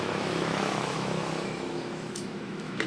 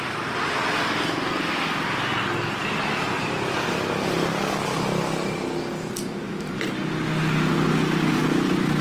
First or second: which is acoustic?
second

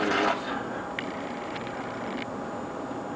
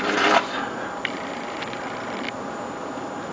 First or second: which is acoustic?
first